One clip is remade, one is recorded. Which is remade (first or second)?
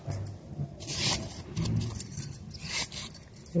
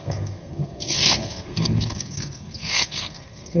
second